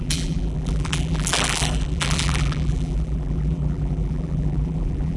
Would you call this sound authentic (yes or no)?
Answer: no